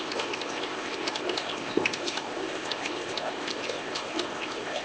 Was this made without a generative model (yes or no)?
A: no